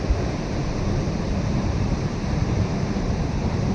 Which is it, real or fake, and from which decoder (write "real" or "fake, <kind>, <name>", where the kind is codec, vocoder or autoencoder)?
fake, vocoder, BigVGAN v2